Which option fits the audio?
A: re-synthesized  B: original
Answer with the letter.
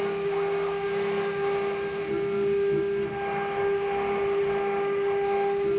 B